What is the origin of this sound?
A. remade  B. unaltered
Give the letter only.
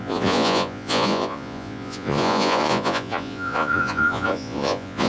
A